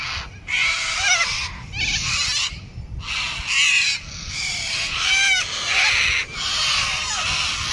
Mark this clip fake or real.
real